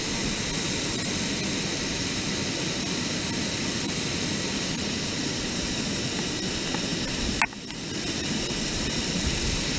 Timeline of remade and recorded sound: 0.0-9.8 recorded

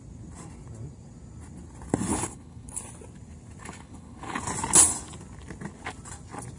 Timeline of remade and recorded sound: 0.0-2.1 recorded; 2.1-2.8 remade; 2.8-3.6 recorded; 3.6-4.4 remade; 4.4-6.6 recorded

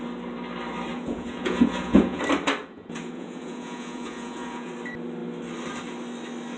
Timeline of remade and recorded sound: 0.0-0.9 recorded; 0.9-2.2 remade; 2.2-2.6 recorded; 2.6-4.7 remade; 4.7-6.6 recorded

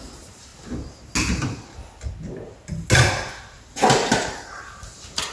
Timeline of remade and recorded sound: 0.0-0.5 remade; 0.5-3.7 recorded; 3.7-5.3 remade